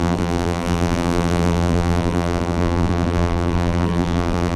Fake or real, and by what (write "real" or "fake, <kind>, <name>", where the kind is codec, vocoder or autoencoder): fake, vocoder, BigVGAN v2